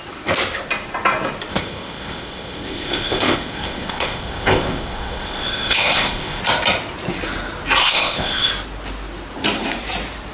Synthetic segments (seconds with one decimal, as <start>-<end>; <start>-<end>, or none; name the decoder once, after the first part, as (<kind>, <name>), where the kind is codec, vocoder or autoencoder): 1.5-6.4 (codec, ZipCodec); 7.8-8.5